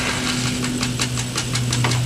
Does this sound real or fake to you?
real